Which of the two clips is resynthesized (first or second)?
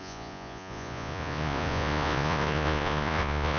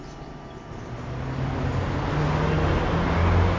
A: first